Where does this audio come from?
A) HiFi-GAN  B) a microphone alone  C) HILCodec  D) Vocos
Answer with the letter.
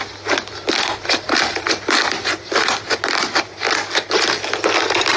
B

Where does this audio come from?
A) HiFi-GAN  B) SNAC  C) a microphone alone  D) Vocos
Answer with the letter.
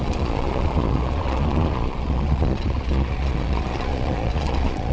D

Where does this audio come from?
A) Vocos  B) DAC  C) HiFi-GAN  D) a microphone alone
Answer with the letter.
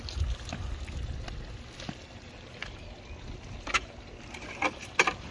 D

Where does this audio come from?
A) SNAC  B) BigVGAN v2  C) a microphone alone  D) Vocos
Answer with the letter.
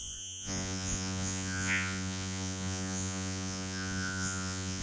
D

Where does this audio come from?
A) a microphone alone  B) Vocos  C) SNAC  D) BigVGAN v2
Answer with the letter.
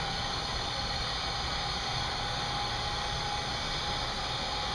A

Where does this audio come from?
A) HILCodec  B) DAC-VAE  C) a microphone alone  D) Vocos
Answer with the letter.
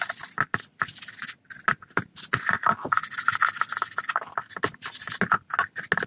C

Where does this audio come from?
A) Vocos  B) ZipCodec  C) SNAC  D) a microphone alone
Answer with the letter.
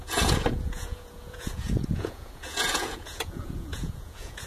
A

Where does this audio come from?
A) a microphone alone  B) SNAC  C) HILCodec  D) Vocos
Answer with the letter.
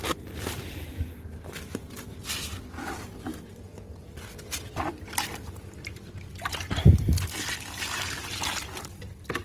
A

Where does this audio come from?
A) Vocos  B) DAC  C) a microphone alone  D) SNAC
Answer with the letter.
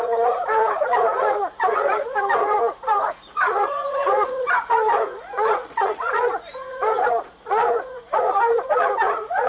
A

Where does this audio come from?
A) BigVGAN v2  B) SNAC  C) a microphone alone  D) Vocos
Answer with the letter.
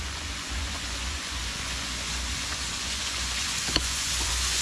D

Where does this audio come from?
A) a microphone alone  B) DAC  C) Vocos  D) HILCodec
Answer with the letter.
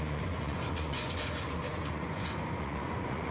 C